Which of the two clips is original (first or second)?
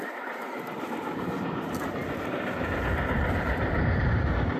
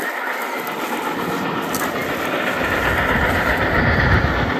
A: second